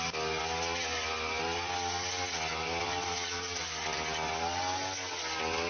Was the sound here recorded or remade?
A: recorded